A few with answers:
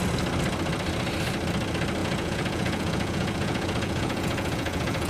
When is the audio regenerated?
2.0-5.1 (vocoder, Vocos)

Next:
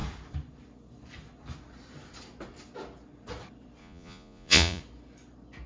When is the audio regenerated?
3.8-4.8 (vocoder, Vocos)